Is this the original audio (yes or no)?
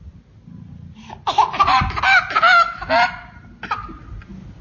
yes